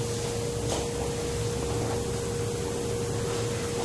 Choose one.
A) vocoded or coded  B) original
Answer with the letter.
B